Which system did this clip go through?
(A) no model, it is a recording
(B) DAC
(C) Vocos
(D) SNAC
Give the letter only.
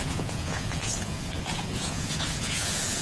C